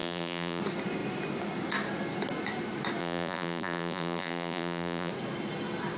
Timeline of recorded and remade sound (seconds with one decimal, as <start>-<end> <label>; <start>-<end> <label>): 0.0-0.6 remade; 0.6-3.0 recorded; 3.0-5.1 remade; 5.1-6.0 recorded